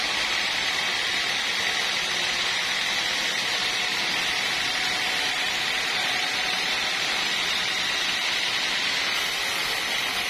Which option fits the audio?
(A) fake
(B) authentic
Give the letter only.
B